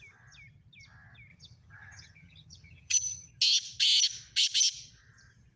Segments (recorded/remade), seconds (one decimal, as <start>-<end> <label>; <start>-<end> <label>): 0.0-1.3 recorded; 1.3-3.3 remade; 3.3-5.6 recorded